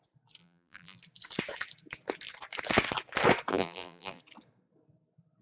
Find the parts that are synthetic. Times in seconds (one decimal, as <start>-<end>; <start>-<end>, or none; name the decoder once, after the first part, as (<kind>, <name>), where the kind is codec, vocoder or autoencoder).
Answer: 0.4-1.0 (vocoder, BigVGAN v2); 3.5-4.2